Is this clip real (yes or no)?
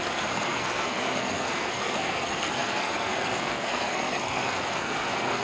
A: no